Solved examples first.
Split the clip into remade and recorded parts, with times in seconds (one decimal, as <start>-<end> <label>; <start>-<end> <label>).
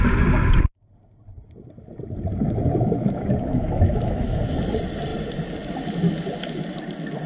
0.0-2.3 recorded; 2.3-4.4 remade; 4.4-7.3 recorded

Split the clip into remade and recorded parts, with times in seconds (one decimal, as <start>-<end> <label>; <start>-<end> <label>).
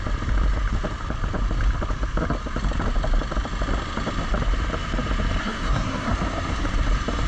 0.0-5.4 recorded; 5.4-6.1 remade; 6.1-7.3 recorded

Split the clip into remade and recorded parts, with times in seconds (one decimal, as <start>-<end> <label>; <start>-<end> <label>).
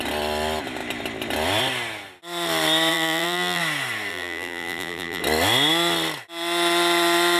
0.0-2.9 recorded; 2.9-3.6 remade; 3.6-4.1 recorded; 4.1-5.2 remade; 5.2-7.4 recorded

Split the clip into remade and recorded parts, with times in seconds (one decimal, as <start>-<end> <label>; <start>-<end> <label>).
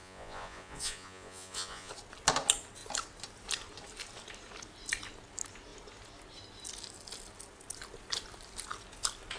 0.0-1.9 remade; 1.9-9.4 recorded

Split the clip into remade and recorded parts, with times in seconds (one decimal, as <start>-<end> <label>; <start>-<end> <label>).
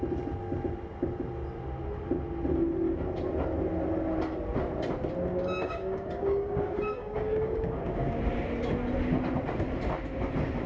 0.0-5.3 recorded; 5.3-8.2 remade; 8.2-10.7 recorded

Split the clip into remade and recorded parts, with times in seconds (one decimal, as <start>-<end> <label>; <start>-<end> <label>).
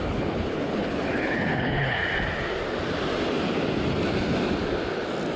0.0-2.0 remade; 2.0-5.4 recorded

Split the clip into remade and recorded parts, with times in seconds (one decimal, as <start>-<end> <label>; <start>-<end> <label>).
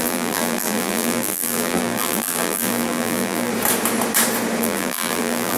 0.0-3.5 remade; 3.5-4.6 recorded; 4.6-5.6 remade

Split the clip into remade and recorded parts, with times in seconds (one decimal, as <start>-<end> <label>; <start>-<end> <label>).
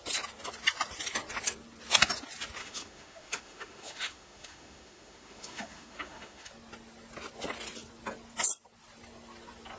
0.0-2.6 recorded; 2.6-6.5 remade; 6.5-9.8 recorded